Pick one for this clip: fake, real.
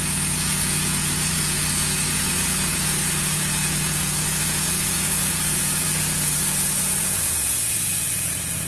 fake